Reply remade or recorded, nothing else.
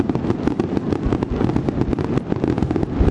recorded